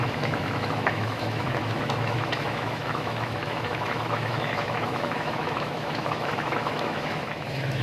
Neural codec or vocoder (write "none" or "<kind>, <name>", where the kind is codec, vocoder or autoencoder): autoencoder, DAC-VAE